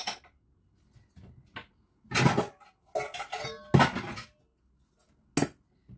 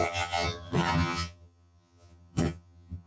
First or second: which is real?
first